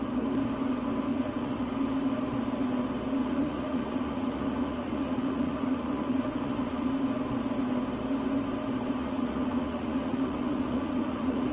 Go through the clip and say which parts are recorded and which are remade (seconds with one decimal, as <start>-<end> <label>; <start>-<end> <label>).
0.0-1.1 recorded; 1.1-1.7 remade; 1.7-3.2 recorded; 3.2-6.9 remade; 6.9-9.0 recorded; 9.0-11.5 remade